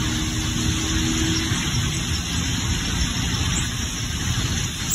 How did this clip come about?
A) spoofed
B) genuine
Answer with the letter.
B